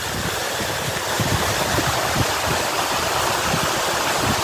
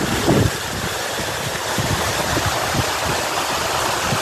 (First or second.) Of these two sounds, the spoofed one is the first